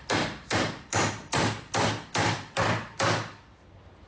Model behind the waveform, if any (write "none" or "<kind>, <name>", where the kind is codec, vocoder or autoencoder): vocoder, BigVGAN v2